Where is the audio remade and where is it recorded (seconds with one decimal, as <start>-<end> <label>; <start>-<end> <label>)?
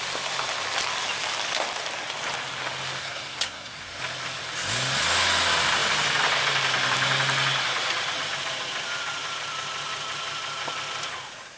0.0-3.0 recorded; 3.0-4.0 remade; 4.0-11.6 recorded